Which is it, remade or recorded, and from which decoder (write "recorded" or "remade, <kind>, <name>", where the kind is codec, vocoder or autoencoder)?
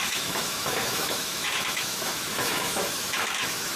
remade, autoencoder, DAC-VAE